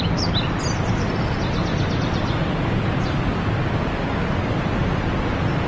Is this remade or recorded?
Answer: recorded